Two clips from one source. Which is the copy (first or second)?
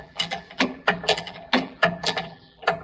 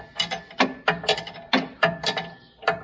first